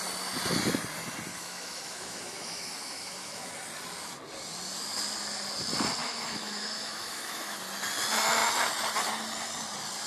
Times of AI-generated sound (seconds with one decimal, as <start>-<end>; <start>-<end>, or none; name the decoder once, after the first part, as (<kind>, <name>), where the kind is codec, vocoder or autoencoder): 1.3-3.5 (autoencoder, DAC-VAE); 6.0-7.6

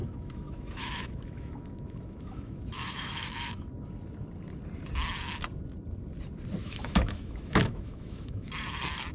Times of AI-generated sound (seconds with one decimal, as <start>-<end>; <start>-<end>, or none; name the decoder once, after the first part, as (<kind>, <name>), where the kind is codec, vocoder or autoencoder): 0.0-3.6 (autoencoder, DAC-VAE); 6.6-8.5

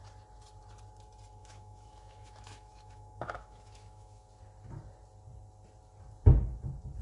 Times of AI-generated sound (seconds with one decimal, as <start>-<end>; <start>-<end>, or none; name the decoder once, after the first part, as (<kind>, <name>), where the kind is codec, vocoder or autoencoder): 1.4-4.3 (autoencoder, DAC-VAE)

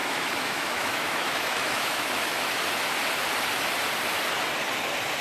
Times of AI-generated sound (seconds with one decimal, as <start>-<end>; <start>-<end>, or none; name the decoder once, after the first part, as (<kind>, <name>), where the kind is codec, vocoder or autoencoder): 0.0-2.5 (autoencoder, DAC-VAE)

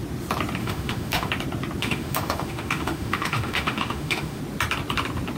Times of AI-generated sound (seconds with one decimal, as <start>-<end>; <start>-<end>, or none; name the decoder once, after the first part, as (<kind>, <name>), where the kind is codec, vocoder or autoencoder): 0.6-1.3 (autoencoder, DAC-VAE); 1.8-4.4

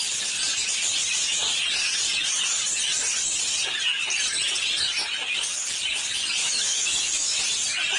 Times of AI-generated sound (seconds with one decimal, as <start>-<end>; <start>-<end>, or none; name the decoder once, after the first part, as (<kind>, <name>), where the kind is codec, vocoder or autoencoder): 6.4-7.4 (autoencoder, DAC-VAE)

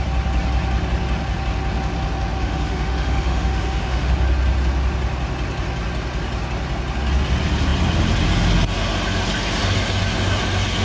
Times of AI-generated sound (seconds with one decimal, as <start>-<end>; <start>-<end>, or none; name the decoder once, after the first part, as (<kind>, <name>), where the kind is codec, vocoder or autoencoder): 2.4-4.1 (autoencoder, DAC-VAE)